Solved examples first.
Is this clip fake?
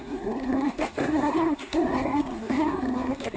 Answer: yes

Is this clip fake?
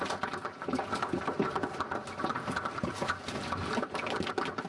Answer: no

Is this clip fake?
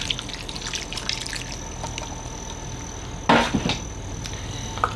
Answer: no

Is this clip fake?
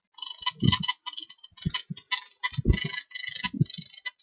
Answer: no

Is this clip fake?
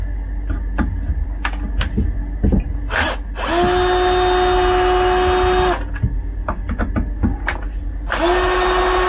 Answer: no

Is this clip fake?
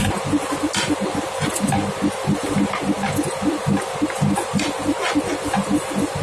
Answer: no